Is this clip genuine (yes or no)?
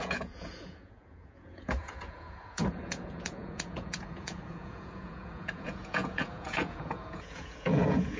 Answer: no